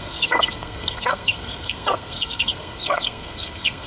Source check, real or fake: fake